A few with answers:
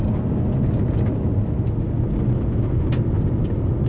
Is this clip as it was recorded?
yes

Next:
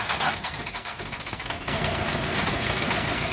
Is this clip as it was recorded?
no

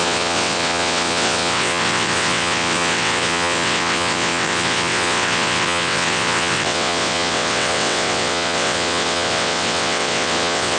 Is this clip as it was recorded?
no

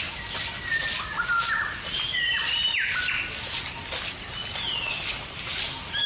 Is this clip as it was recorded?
yes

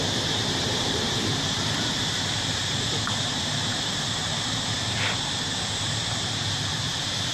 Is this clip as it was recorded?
no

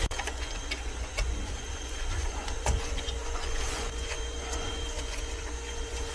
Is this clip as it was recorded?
no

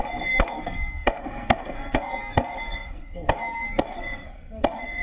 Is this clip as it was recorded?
no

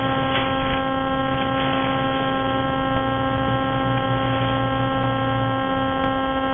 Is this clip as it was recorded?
yes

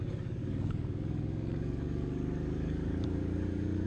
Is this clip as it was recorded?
no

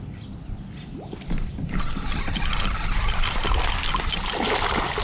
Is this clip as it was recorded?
yes